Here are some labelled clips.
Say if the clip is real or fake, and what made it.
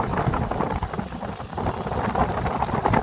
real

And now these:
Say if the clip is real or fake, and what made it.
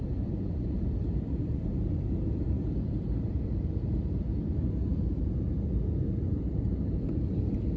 fake, vocoder, BigVGAN v2